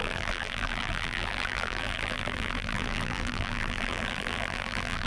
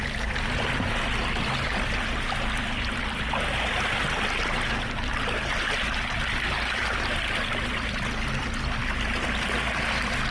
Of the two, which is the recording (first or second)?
second